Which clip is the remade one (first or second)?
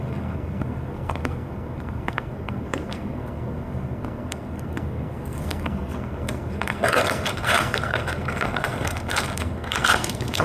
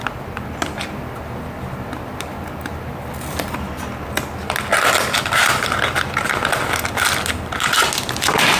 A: first